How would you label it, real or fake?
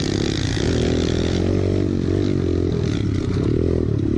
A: real